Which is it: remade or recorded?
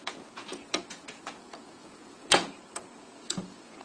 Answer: remade